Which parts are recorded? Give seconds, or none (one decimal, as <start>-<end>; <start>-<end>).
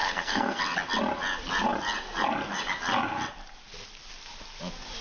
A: 0.6-5.0